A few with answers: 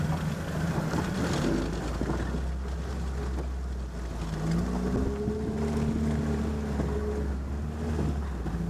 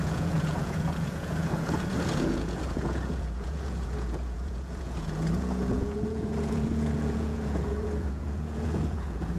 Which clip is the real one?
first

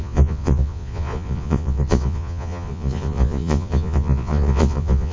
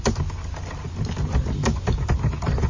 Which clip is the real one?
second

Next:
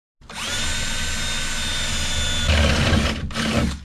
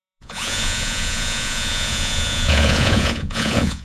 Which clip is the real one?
first